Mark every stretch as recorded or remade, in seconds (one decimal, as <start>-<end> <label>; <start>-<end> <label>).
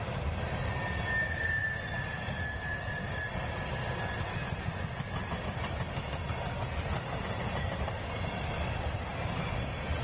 0.0-10.0 recorded